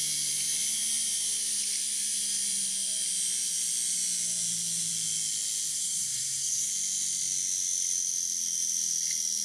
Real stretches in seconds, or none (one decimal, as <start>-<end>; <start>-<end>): 0.0-5.7; 6.7-9.4